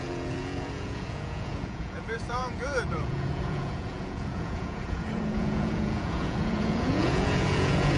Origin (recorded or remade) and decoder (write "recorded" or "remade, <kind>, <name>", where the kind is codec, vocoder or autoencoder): remade, vocoder, Vocos